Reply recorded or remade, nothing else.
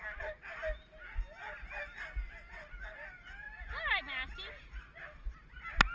recorded